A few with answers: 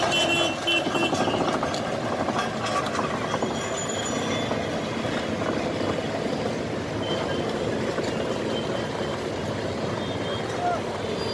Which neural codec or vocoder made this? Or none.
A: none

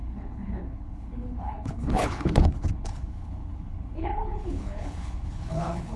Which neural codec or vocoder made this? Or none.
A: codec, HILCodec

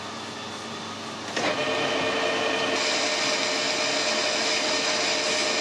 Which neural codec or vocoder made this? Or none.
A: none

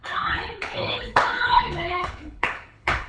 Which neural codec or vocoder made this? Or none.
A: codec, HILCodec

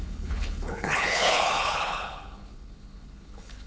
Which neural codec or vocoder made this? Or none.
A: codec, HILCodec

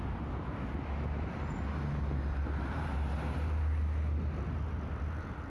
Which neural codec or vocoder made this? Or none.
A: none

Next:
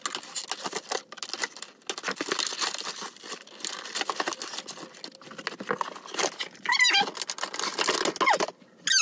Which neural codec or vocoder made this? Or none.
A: none